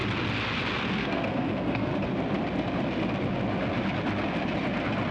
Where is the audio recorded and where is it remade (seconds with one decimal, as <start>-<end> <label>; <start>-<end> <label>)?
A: 0.0-1.0 recorded; 1.0-1.9 remade; 1.9-5.1 recorded